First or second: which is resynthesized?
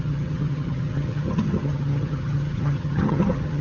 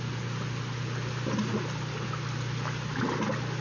first